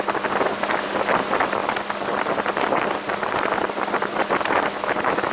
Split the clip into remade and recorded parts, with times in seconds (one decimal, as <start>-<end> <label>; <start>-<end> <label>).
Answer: 0.0-5.3 recorded